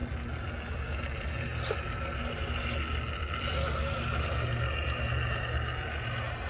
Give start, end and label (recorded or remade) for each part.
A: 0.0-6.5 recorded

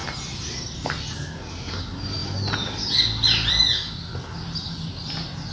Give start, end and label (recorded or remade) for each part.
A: 0.0-5.5 recorded

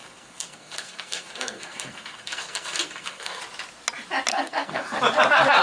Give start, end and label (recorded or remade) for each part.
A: 0.0-3.4 remade; 3.4-4.3 recorded; 4.3-5.0 remade; 5.0-5.6 recorded

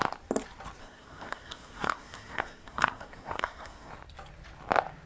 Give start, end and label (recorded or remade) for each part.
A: 0.0-0.8 recorded; 0.8-3.9 remade; 3.9-5.1 recorded

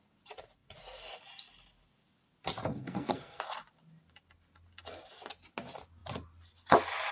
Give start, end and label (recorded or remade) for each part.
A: 0.0-2.7 recorded; 2.7-3.4 remade; 3.4-7.1 recorded

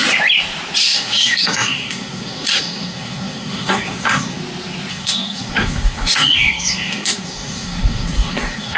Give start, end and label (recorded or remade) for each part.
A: 0.0-0.8 recorded; 0.8-4.4 remade; 4.4-4.9 recorded; 4.9-8.8 remade

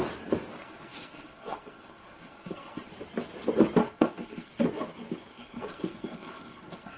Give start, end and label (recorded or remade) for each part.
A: 0.0-0.6 recorded; 0.6-2.9 remade; 2.9-3.8 recorded; 3.8-4.5 remade; 4.5-5.3 recorded; 5.3-7.0 remade